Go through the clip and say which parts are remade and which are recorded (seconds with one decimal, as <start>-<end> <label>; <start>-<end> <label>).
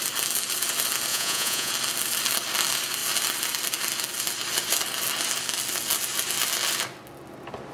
0.0-1.1 recorded; 1.1-1.7 remade; 1.7-7.7 recorded